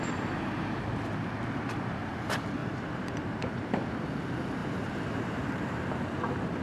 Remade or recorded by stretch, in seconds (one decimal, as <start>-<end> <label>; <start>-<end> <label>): 0.0-2.6 recorded; 2.6-4.0 remade; 4.0-4.6 recorded; 4.6-6.0 remade; 6.0-6.6 recorded